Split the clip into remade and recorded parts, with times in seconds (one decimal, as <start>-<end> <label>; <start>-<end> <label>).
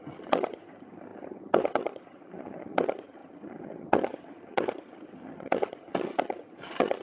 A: 0.0-7.0 remade